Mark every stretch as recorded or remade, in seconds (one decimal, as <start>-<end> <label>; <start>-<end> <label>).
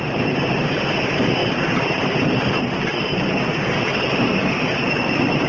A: 0.0-5.5 remade